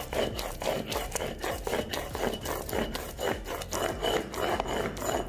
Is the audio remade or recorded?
recorded